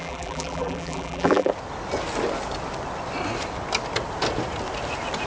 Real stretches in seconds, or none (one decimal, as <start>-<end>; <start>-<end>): 1.5-5.3